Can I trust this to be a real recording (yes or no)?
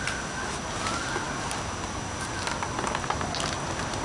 yes